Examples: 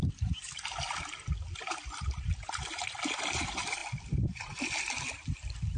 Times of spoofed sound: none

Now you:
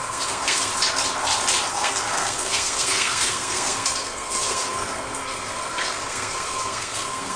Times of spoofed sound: 0.0-0.7 (codec, SNAC); 1.7-7.4

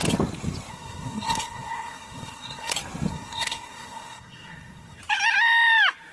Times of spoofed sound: 0.7-2.7 (codec, SNAC); 3.1-5.0

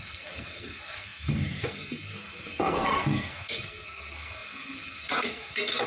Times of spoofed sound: 0.0-5.9 (codec, SNAC)